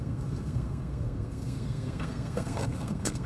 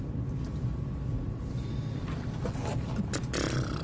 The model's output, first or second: first